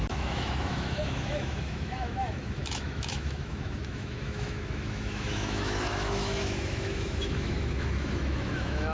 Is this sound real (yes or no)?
no